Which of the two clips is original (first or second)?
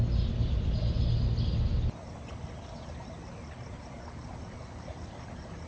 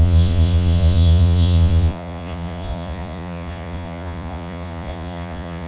first